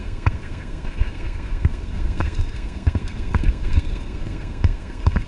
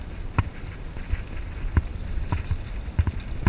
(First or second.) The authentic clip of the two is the second